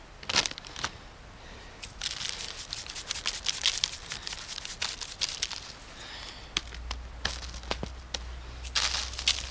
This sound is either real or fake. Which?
real